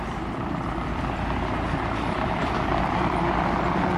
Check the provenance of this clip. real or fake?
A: fake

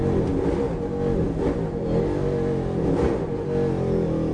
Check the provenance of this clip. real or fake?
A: real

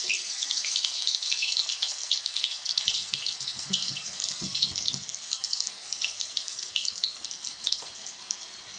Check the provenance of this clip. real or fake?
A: fake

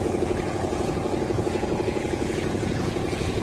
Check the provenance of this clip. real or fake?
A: fake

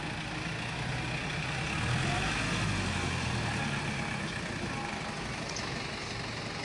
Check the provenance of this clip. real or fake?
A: real